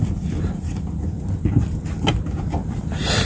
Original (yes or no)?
yes